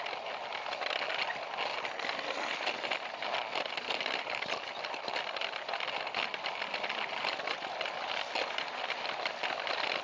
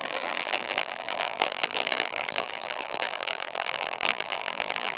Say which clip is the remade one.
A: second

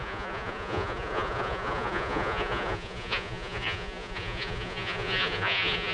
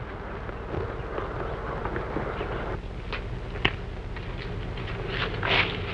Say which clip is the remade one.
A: first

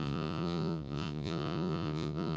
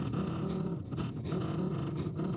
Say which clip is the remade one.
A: first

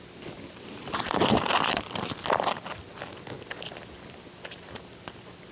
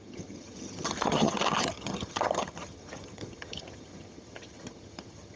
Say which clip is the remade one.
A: second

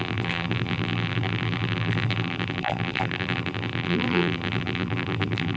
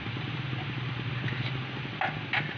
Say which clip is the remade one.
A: first